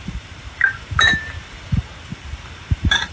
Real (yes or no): no